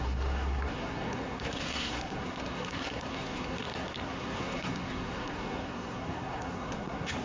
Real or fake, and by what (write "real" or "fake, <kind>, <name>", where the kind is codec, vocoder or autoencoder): fake, codec, SNAC